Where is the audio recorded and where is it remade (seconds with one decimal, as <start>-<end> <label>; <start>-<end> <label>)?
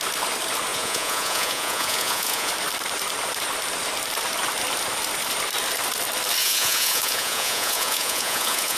0.0-0.7 recorded; 0.7-2.5 remade; 2.5-6.4 recorded; 6.4-8.8 remade